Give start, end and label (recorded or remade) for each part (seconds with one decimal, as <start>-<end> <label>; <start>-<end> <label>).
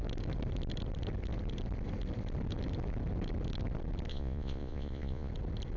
0.0-4.1 recorded; 4.1-5.3 remade; 5.3-5.8 recorded